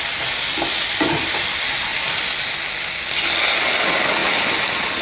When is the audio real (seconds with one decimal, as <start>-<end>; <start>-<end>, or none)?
0.0-5.0